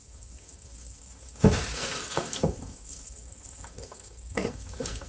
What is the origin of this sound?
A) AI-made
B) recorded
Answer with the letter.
A